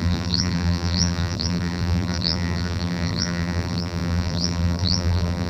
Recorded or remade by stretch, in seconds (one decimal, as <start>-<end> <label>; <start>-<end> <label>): 0.0-5.5 remade